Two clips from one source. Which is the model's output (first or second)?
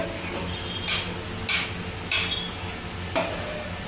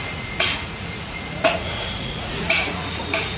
second